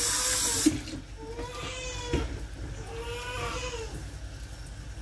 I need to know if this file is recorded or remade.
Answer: recorded